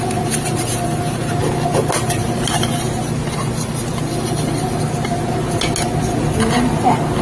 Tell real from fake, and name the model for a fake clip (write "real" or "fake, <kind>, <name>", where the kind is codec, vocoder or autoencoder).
real